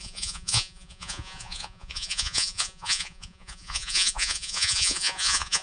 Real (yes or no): no